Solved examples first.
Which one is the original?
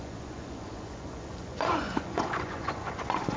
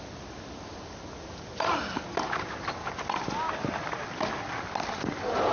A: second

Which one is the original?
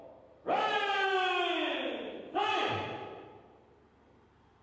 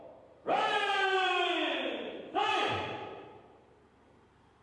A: first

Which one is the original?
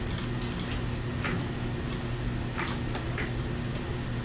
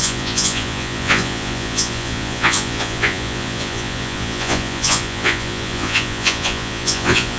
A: first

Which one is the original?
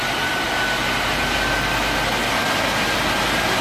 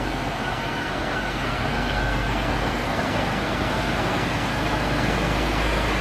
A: first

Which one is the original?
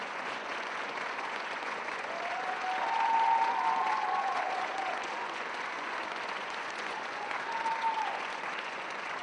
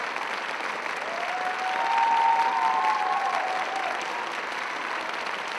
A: second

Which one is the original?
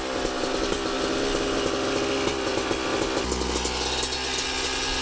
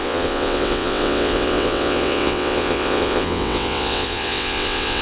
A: first